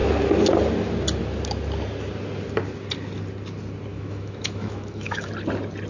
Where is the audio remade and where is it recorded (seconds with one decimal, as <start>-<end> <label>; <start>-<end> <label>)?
0.0-3.9 recorded; 3.9-5.3 remade; 5.3-5.9 recorded